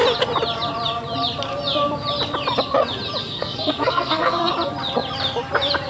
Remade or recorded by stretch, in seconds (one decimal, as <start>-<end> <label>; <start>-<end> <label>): 0.0-3.2 recorded; 3.2-4.5 remade; 4.5-5.9 recorded